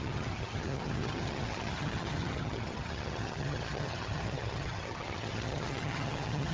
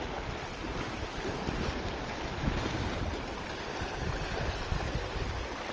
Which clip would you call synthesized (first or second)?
first